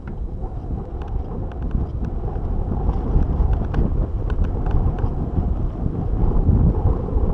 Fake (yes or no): no